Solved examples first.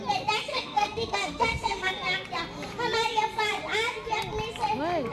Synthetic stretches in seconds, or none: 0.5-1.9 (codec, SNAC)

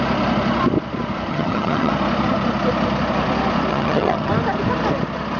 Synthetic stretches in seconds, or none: 1.3-1.9 (vocoder, HiFi-GAN); 3.7-4.3

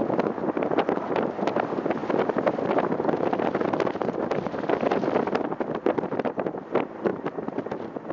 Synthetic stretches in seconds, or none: 0.4-1.5 (vocoder, BigVGAN v2); 7.1-8.1

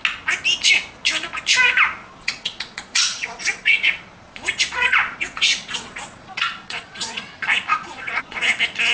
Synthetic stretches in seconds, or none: 2.0-7.2 (vocoder, Vocos); 7.7-8.5

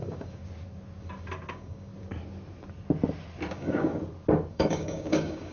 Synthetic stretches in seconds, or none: 0.0-0.4 (codec, DAC); 1.5-1.9; 3.5-3.9; 4.5-5.5

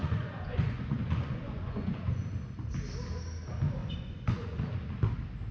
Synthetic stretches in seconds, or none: 0.0-2.3 (vocoder, Vocos); 3.8-4.6

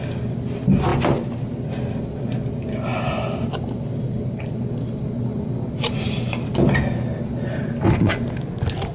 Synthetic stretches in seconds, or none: 2.9-3.5 (vocoder, BigVGAN v2)

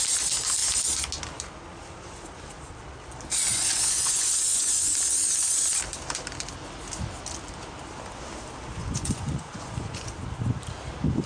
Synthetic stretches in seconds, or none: 3.5-4.9 (vocoder, Vocos); 8.8-10.1